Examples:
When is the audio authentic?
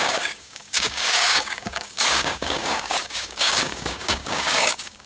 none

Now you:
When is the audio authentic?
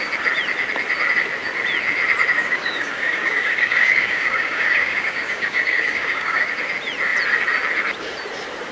0.0-2.4; 6.5-8.7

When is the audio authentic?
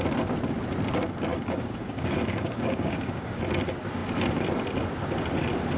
0.0-1.3; 3.4-5.8